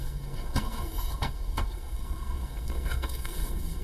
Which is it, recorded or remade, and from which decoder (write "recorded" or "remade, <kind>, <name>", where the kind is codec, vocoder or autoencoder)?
remade, codec, SNAC